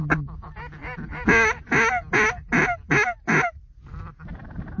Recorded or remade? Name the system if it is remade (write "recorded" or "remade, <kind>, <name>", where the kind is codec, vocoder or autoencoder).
recorded